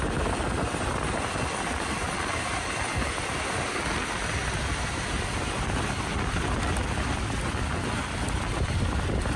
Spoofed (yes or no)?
no